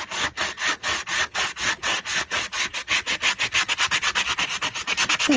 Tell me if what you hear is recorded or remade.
recorded